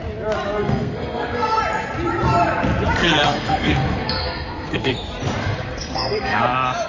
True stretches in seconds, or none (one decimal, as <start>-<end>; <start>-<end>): 0.0-0.6; 1.6-3.0; 4.9-5.4; 6.4-6.9